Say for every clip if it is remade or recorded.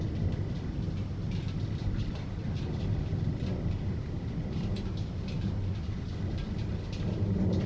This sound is recorded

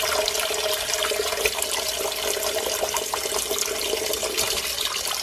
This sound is recorded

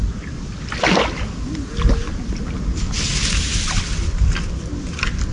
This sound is recorded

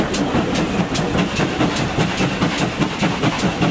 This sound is recorded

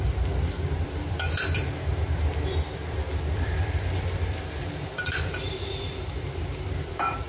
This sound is remade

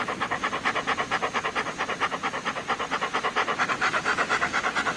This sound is recorded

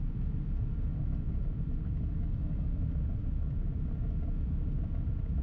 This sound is recorded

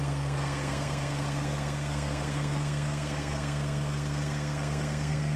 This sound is remade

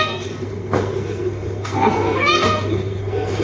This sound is remade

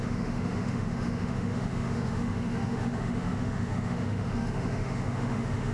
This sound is remade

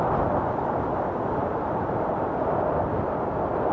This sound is recorded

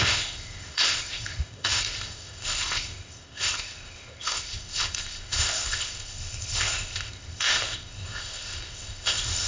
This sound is remade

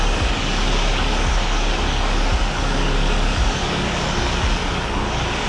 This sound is remade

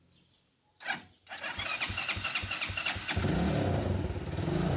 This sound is recorded